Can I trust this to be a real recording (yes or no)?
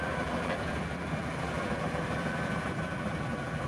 no